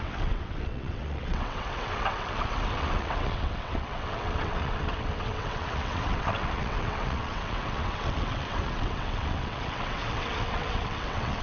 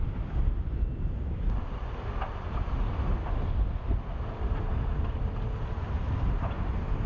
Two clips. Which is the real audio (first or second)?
second